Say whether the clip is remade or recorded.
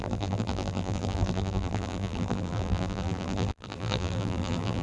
remade